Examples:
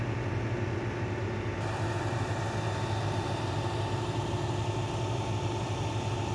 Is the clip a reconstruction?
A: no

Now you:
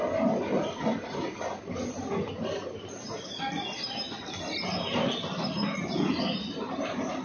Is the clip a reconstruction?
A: no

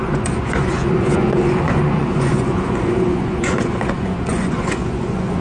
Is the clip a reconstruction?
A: yes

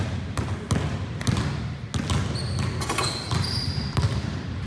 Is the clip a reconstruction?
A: no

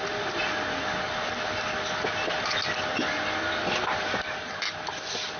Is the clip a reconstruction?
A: no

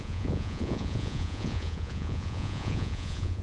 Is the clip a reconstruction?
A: yes